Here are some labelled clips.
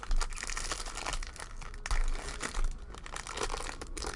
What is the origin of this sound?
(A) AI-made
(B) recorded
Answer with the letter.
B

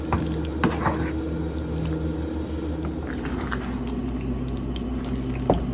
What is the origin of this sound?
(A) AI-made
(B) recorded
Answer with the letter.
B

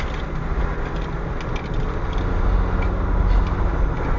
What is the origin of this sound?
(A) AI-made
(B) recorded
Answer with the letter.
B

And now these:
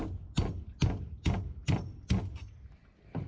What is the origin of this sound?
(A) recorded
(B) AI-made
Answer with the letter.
A